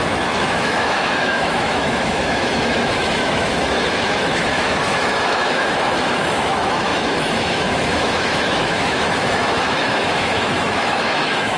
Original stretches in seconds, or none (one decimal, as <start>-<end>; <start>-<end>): none